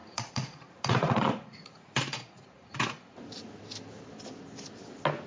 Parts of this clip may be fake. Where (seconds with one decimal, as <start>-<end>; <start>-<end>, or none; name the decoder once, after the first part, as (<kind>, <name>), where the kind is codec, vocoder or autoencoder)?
0.0-3.2 (vocoder, Vocos)